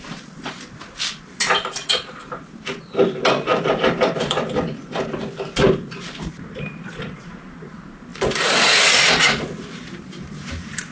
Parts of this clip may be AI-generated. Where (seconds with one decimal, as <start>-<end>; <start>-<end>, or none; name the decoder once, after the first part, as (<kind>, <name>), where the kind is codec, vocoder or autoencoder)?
0.0-10.9 (vocoder, BigVGAN v2)